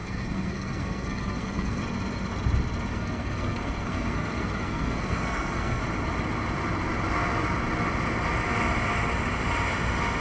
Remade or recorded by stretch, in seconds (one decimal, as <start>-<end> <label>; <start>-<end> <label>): 0.0-1.8 remade; 1.8-2.9 recorded; 2.9-5.8 remade; 5.8-10.2 recorded